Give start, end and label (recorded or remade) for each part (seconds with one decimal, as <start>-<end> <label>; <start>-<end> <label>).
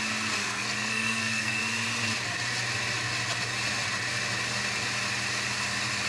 0.0-0.4 recorded; 0.4-1.6 remade; 1.6-6.1 recorded